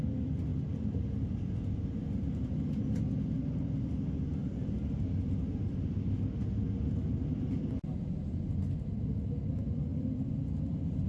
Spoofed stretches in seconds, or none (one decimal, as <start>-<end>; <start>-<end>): 9.9-10.4